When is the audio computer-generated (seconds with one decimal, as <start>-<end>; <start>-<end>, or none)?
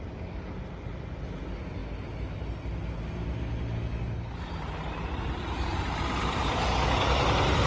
none